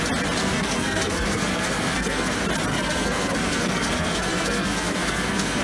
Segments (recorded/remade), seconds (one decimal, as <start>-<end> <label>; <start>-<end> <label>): 0.0-0.4 recorded; 0.4-2.3 remade; 2.3-2.7 recorded; 2.7-5.6 remade